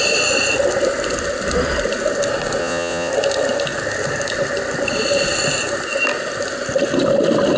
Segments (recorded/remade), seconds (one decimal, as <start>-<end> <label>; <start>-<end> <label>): 0.0-2.6 recorded; 2.6-3.1 remade; 3.1-7.6 recorded